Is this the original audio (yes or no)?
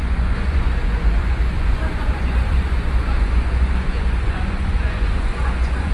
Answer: no